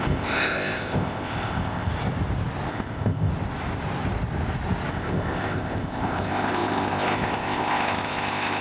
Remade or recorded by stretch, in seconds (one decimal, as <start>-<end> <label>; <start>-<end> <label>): 0.0-1.9 remade; 1.9-2.7 recorded; 2.7-3.3 remade; 3.3-4.9 recorded; 4.9-8.6 remade